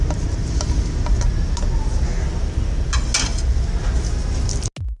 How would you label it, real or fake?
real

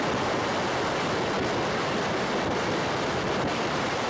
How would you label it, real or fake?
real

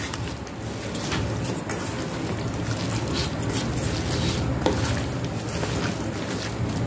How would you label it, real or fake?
real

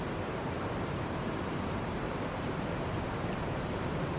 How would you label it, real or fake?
fake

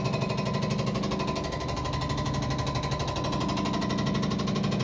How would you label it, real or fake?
real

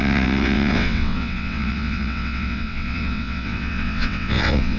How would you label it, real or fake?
fake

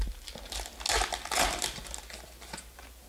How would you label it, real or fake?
real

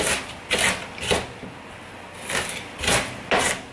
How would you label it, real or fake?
real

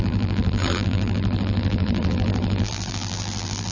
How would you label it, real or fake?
fake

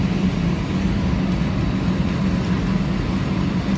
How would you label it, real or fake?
real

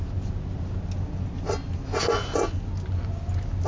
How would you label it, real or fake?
real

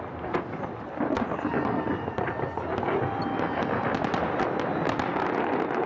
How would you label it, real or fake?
real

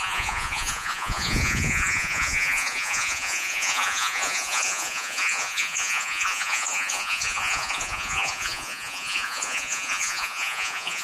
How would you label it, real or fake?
fake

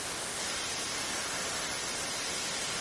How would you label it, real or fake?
real